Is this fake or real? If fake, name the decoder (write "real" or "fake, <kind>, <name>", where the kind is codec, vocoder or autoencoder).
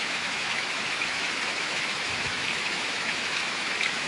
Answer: fake, autoencoder, DAC-VAE